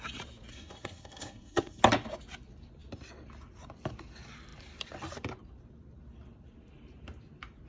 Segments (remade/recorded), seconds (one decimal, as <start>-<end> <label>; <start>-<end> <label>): 0.0-0.5 recorded; 0.5-1.8 remade; 1.8-7.7 recorded